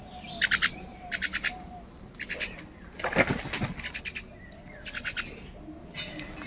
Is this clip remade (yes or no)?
no